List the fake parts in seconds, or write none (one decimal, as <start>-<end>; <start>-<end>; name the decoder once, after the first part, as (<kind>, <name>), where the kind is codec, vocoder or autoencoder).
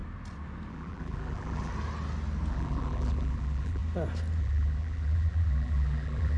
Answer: 0.7-1.7 (vocoder, BigVGAN v2); 2.5-3.8; 4.4-6.4